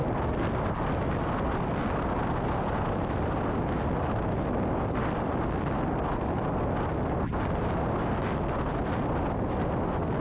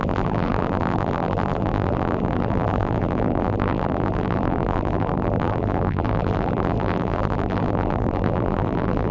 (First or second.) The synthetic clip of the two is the second